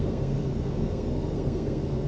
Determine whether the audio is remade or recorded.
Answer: remade